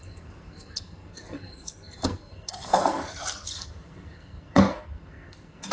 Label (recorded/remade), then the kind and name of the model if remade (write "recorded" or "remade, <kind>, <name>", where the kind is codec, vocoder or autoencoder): remade, codec, SNAC